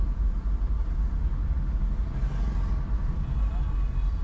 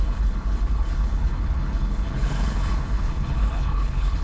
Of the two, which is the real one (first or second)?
first